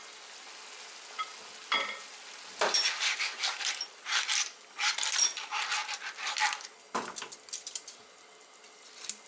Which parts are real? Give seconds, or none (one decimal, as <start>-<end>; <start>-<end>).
0.0-9.3